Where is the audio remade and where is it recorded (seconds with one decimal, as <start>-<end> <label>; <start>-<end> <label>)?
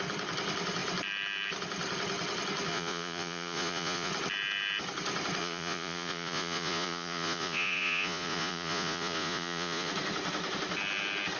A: 0.0-2.7 recorded; 2.7-4.1 remade; 4.1-5.4 recorded; 5.4-9.9 remade; 9.9-11.4 recorded